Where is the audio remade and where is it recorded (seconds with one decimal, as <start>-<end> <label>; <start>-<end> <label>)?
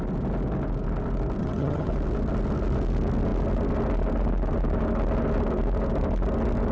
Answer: 0.0-1.4 recorded; 1.4-1.9 remade; 1.9-6.7 recorded